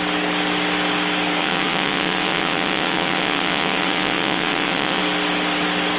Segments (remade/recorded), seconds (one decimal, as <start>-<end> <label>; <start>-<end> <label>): 0.0-1.4 recorded; 1.4-5.0 remade; 5.0-6.0 recorded